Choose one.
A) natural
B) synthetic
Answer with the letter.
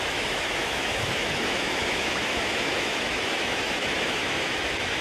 B